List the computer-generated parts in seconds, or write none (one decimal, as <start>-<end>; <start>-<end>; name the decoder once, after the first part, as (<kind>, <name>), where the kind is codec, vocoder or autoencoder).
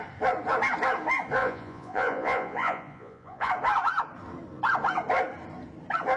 1.4-3.5 (vocoder, Vocos)